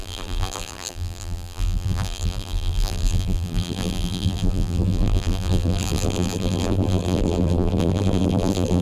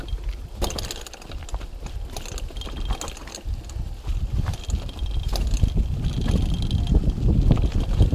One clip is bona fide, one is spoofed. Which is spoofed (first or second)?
first